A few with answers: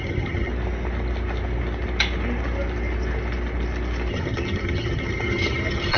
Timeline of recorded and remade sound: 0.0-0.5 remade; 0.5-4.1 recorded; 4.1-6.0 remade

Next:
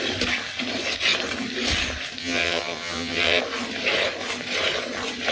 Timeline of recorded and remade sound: 0.0-2.2 recorded; 2.2-3.4 remade; 3.4-5.3 recorded

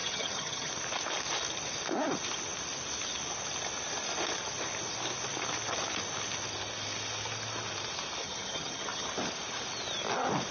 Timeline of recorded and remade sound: 0.0-0.7 remade; 0.7-8.2 recorded; 8.2-9.1 remade; 9.1-10.5 recorded

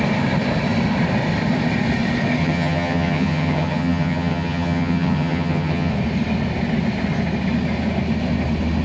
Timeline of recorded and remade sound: 0.0-2.4 recorded; 2.4-5.9 remade; 5.9-8.8 recorded